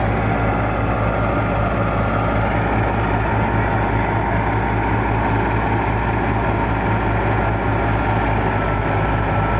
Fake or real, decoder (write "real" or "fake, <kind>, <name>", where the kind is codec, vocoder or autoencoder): real